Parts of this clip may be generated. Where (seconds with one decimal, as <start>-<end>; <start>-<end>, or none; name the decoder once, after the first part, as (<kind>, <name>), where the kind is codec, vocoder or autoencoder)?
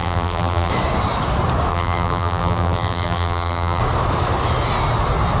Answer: 0.0-0.7 (vocoder, BigVGAN v2); 1.7-3.8